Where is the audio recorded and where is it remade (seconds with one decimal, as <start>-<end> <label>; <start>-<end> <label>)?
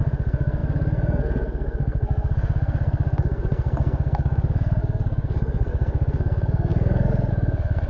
0.0-7.9 remade